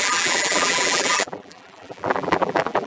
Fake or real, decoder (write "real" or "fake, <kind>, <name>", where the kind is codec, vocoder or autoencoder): fake, vocoder, BigVGAN v2